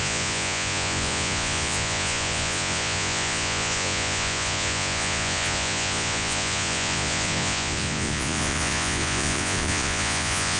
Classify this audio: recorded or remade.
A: remade